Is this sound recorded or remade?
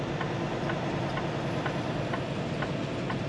recorded